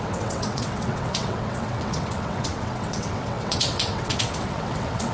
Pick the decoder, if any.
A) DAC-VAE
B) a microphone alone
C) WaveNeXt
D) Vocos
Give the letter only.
C